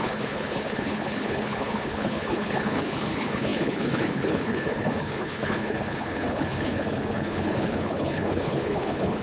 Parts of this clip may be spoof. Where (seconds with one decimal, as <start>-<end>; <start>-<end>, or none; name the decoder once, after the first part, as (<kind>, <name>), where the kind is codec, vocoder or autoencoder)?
0.0-9.2 (codec, HILCodec)